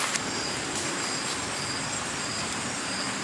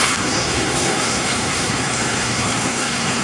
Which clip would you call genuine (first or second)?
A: first